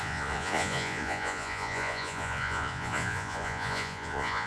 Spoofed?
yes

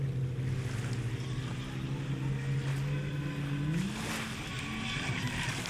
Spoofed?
no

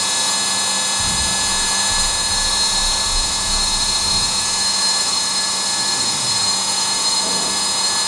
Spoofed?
yes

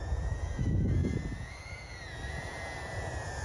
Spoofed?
yes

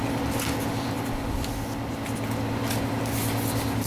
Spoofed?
no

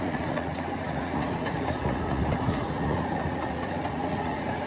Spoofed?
yes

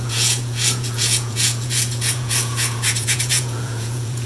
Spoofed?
yes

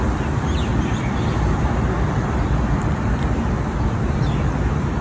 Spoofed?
no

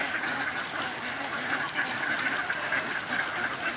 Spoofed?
no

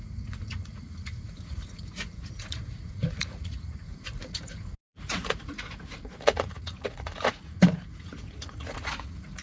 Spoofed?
yes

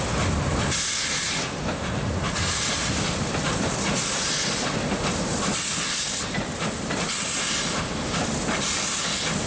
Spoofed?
no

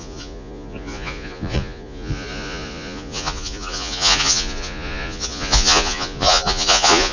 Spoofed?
yes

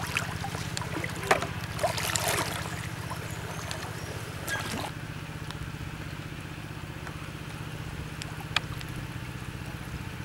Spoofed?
no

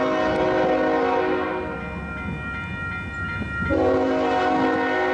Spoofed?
no